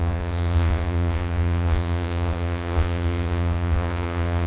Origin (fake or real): fake